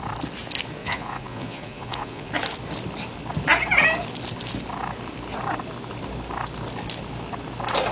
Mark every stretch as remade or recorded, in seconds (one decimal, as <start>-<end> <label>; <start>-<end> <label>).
0.0-0.8 recorded; 0.8-2.3 remade; 2.3-7.9 recorded